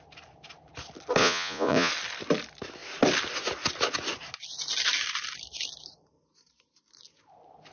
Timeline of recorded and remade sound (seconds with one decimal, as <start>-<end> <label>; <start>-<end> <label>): 0.0-1.2 recorded; 1.2-1.9 remade; 1.9-7.7 recorded